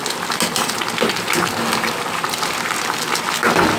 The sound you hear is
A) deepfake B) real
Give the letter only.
B